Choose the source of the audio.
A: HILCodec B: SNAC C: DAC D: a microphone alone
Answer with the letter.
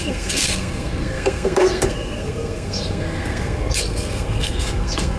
B